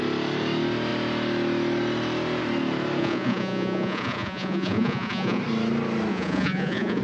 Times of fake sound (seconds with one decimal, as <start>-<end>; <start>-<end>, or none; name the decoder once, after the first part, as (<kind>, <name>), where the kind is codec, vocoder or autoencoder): 3.0-5.4 (vocoder, Vocos); 6.1-7.0